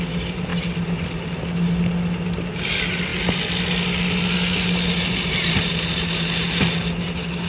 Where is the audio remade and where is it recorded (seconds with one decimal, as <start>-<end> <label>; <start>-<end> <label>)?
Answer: 0.0-7.5 recorded